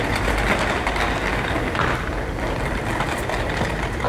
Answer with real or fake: real